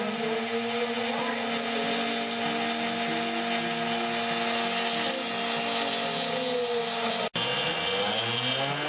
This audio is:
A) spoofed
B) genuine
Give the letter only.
B